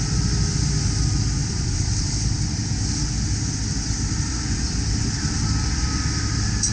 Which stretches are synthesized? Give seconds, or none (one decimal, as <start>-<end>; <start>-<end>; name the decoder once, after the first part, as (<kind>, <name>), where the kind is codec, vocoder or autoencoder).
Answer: none